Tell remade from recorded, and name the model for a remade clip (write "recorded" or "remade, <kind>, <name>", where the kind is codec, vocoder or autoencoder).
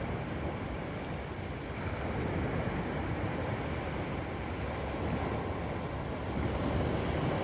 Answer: recorded